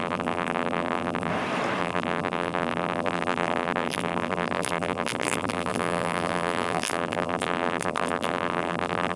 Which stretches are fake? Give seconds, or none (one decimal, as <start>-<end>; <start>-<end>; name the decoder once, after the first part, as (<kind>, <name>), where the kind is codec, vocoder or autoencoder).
0.0-1.3 (vocoder, BigVGAN v2); 1.8-9.2